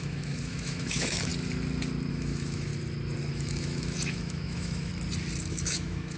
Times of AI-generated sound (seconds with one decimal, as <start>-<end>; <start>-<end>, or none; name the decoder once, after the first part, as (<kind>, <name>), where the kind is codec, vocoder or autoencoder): 0.0-1.3 (autoencoder, DAC-VAE); 2.1-2.7; 3.3-4.9; 5.5-6.2